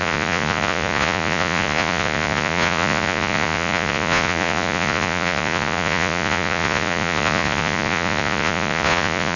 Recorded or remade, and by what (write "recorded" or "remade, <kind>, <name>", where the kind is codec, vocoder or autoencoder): remade, vocoder, Vocos